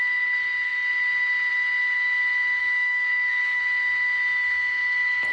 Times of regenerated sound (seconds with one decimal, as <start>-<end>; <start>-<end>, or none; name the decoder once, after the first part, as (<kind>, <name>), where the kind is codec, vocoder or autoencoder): 2.6-3.6 (codec, DAC)